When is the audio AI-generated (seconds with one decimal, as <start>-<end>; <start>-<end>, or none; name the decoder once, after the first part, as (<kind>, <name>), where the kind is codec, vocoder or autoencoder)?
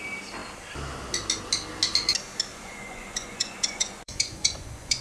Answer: 2.5-5.0 (vocoder, Vocos)